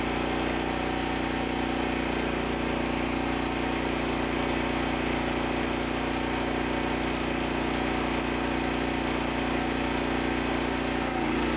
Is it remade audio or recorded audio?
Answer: recorded